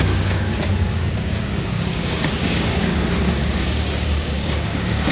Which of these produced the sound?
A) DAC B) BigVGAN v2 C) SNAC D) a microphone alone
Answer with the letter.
A